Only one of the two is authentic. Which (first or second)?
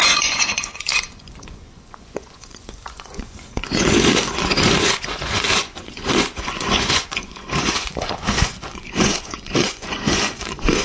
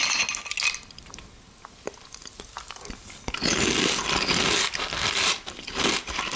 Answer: second